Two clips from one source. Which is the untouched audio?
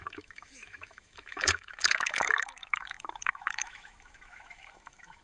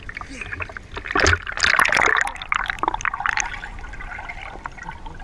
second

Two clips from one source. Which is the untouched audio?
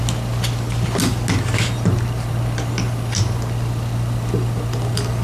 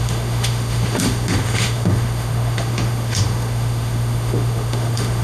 first